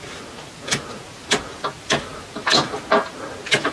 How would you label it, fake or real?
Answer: real